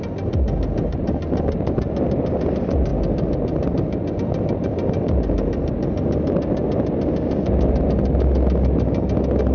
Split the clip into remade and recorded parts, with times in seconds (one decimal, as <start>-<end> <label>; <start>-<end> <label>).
0.0-9.5 recorded